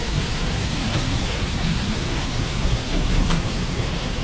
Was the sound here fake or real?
fake